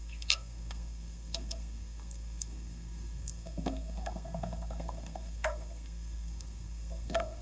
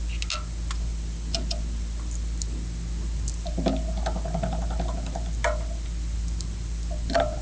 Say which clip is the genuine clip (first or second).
second